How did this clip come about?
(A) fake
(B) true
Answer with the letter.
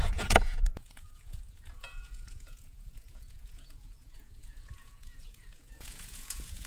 A